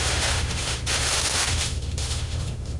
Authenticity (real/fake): fake